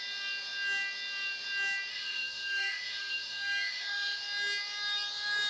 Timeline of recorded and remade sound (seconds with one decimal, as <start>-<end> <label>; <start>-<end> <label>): 0.0-1.9 recorded; 1.9-4.2 remade; 4.2-5.5 recorded